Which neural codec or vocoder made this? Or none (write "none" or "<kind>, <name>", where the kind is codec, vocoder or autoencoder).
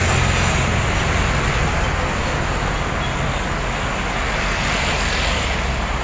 none